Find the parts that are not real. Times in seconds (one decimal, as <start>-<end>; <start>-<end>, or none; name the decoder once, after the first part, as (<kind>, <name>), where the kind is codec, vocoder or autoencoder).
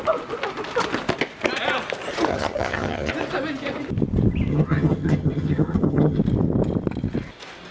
2.3-3.1 (vocoder, HiFi-GAN); 4.5-6.2